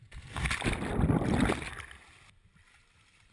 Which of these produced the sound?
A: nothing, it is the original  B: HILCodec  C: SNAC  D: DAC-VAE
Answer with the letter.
A